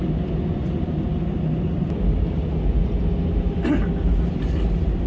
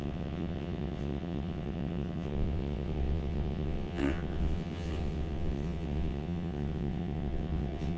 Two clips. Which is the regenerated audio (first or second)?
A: second